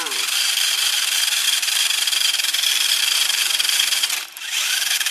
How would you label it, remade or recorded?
remade